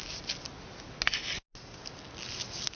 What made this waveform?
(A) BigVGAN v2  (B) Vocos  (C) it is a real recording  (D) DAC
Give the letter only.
C